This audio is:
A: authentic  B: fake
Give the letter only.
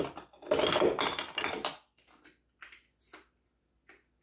A